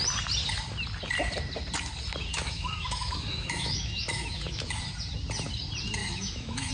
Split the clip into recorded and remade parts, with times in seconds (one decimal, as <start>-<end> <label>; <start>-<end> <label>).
0.0-2.3 recorded; 2.3-4.8 remade; 4.8-6.0 recorded; 6.0-6.7 remade